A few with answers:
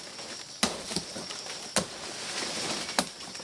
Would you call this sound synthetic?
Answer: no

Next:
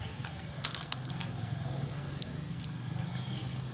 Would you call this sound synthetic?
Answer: yes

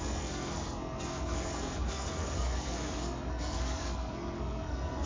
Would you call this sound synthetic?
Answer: yes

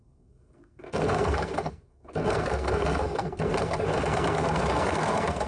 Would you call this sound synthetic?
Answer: yes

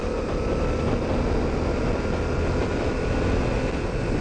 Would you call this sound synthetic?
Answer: no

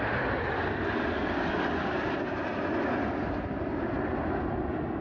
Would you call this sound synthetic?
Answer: no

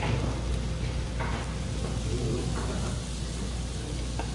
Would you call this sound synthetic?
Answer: no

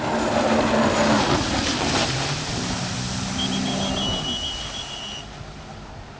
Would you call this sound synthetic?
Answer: no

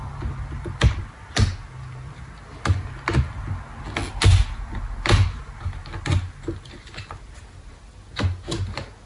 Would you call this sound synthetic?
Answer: no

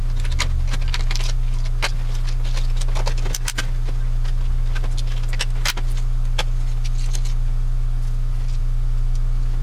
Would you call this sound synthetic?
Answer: no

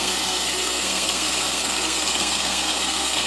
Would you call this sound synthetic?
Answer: yes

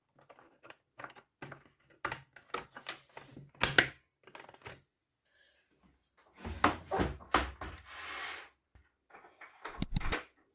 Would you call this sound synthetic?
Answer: no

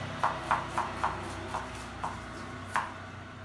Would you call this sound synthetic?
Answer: no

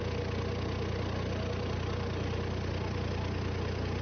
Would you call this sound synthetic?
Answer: no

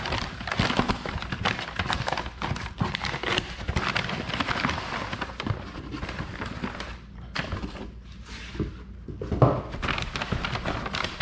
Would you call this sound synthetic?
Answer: no